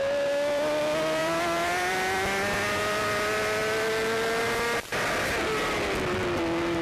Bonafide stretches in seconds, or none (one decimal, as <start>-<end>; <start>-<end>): 3.6-4.4; 4.9-6.8